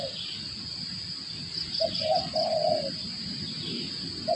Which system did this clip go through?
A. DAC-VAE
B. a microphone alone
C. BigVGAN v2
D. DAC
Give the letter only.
B